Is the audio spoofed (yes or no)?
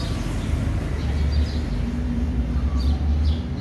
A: no